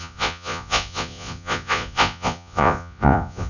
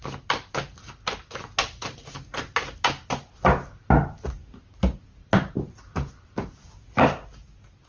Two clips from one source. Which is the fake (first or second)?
first